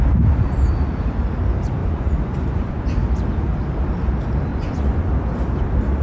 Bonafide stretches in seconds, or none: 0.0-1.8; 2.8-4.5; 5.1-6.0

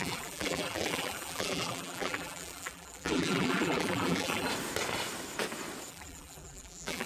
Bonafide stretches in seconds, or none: 4.5-5.9

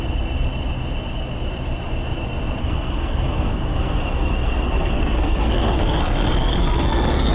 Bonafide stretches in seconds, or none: 0.0-2.6

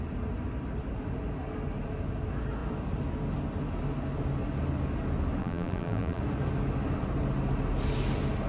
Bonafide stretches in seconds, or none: 0.0-5.4; 6.2-8.5

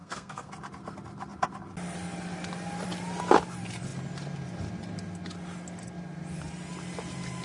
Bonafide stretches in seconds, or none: 0.5-7.4

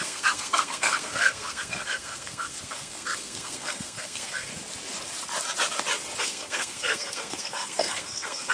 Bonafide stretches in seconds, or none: 4.5-6.2

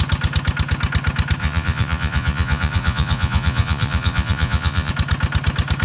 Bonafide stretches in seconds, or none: 0.0-1.4; 4.9-5.8